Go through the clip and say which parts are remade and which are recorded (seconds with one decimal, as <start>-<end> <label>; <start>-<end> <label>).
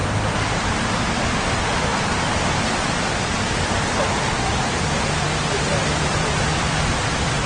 0.0-0.8 remade; 0.8-5.7 recorded; 5.7-6.8 remade; 6.8-7.5 recorded